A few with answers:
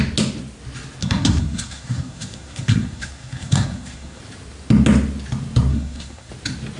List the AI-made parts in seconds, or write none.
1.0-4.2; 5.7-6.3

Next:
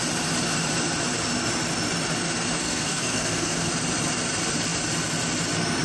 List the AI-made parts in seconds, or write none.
2.6-3.7

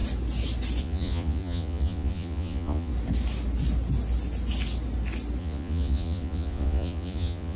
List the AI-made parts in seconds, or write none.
0.8-2.9; 5.4-7.6

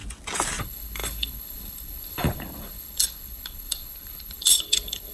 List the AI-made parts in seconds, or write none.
0.6-5.1

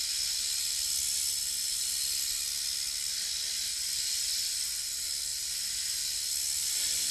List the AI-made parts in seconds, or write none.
none

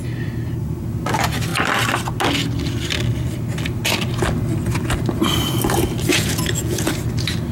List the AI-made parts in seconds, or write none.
6.1-6.9

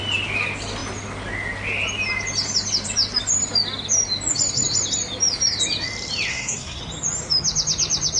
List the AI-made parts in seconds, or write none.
6.3-6.8